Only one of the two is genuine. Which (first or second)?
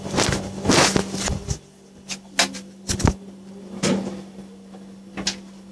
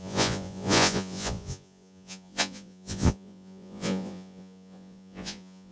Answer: first